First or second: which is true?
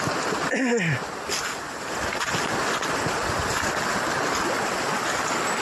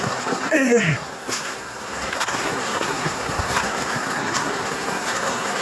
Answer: first